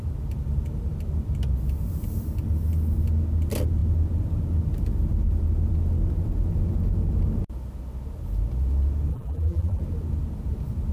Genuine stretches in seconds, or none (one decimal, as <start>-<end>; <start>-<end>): 0.0-9.1; 9.8-10.9